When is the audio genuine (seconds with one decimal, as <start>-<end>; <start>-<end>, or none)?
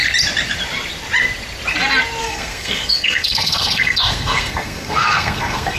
0.0-2.2